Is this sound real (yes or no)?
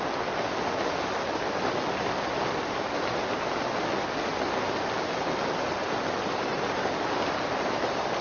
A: yes